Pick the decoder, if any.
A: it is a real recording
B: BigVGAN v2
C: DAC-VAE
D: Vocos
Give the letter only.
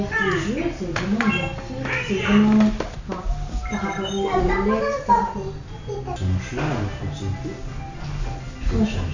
A